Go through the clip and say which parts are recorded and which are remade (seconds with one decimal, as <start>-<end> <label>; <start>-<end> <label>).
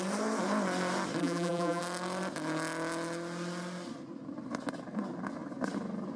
0.0-1.2 recorded; 1.2-1.8 remade; 1.8-6.2 recorded